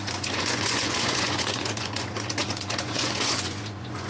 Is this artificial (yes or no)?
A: yes